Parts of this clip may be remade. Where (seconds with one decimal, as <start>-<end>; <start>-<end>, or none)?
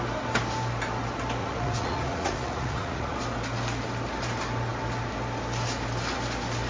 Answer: 1.4-3.2